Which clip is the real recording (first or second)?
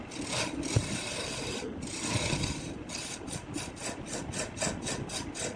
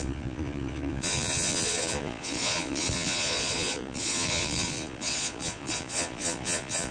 first